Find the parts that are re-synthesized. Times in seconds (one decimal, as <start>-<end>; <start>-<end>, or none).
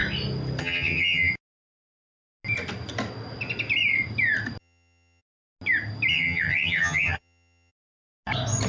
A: 0.6-1.3; 4.6-5.2; 6.1-7.7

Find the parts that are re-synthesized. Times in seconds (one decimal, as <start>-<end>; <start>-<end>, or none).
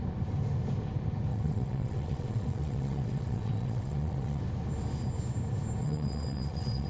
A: 1.3-4.4; 5.8-6.9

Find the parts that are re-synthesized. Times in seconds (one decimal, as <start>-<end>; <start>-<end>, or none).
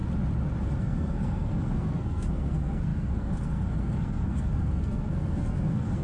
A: 0.8-6.0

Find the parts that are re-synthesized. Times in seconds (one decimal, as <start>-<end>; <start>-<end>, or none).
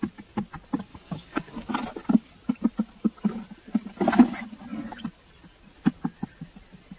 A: 0.9-1.7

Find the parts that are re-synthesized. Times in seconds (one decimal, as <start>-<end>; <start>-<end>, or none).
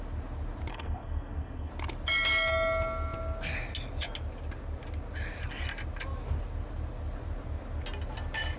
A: 0.7-1.7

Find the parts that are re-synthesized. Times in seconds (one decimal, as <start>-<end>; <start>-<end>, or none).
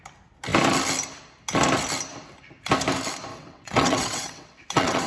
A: 3.3-5.1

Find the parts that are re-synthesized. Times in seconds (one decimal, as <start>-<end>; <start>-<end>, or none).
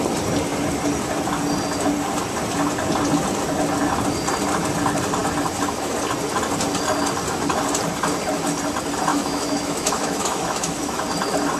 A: 9.1-11.0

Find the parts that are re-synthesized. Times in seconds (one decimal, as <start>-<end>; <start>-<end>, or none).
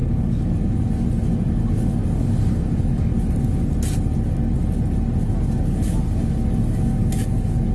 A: 0.0-3.1; 5.3-7.7